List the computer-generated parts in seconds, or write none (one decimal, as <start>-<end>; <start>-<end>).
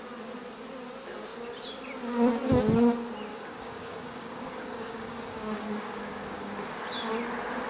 3.3-6.8